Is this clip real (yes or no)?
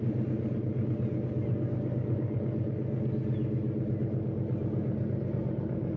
yes